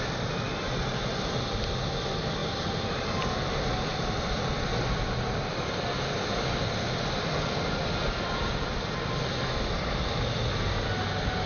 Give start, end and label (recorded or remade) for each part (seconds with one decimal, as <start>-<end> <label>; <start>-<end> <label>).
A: 0.0-3.9 recorded; 3.9-9.1 remade; 9.1-11.5 recorded